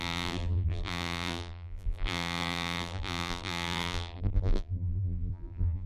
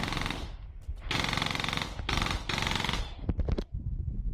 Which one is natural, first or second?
second